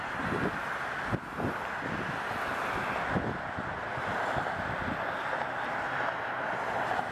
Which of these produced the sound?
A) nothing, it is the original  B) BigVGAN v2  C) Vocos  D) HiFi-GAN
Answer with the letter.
A